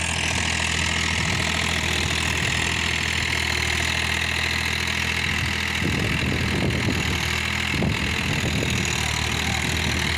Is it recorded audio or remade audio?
recorded